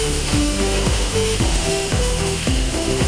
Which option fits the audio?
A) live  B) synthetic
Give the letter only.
B